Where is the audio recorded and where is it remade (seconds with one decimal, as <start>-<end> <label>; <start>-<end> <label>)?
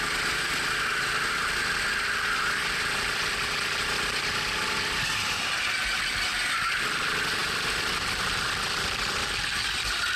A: 0.0-10.2 recorded